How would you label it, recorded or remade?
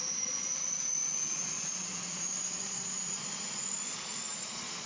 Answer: remade